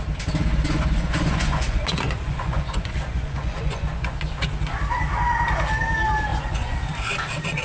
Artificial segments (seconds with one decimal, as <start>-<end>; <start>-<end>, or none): 0.5-4.3; 6.3-6.8